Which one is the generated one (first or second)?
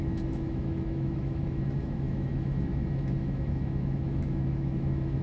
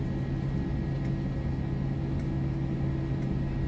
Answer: first